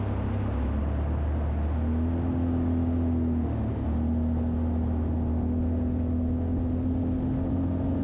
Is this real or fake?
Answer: real